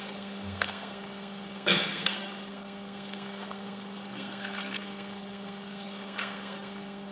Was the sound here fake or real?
fake